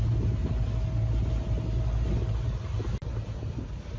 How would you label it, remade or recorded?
recorded